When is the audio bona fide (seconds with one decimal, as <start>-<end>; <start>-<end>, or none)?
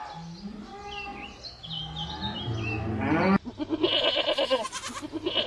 0.0-5.5